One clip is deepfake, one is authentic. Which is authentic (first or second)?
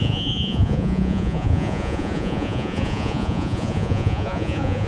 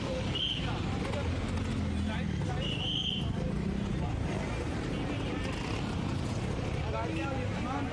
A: second